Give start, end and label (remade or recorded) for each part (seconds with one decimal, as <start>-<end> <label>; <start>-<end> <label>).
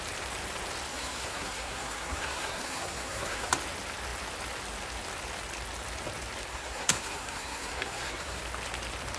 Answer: 0.0-0.9 recorded; 0.9-3.5 remade; 3.5-6.5 recorded; 6.5-8.4 remade; 8.4-9.2 recorded